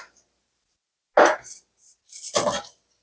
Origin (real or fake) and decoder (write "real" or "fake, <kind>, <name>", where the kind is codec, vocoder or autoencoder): real